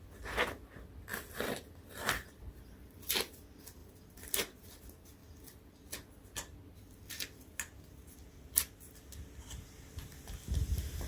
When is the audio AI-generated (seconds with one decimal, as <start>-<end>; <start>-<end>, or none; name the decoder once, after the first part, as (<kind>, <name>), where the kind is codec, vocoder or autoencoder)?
1.1-3.3 (vocoder, BigVGAN v2)